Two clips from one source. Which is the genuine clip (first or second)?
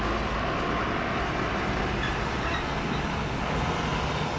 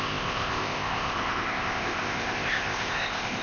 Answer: first